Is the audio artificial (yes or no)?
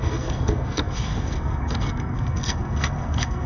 yes